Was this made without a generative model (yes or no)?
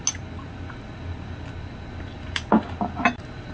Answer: yes